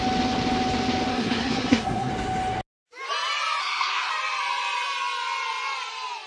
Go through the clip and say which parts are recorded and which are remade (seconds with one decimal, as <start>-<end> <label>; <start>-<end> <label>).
0.0-1.1 recorded; 1.1-2.1 remade; 2.1-3.6 recorded; 3.6-4.1 remade; 4.1-6.3 recorded